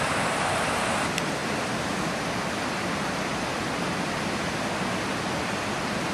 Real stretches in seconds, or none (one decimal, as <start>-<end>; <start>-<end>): 1.4-4.2